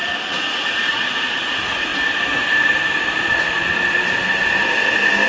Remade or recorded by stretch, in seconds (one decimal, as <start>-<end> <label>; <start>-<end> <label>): 0.0-0.7 recorded; 0.7-1.9 remade; 1.9-5.3 recorded